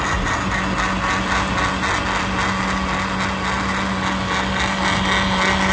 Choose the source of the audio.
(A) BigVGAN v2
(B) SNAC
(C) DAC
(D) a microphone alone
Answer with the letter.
D